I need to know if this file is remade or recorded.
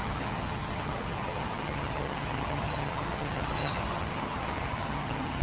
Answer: remade